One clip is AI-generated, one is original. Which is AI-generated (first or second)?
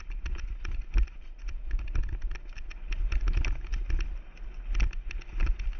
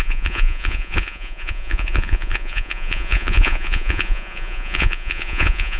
second